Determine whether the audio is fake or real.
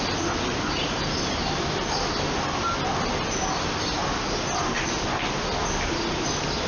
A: real